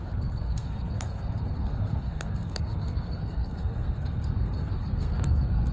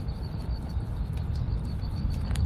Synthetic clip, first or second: first